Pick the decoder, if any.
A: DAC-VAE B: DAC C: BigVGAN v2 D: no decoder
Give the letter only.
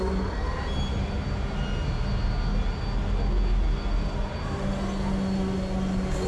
D